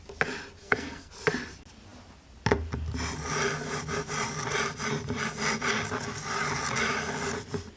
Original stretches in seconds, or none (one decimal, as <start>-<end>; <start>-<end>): 0.0-0.6; 1.1-7.8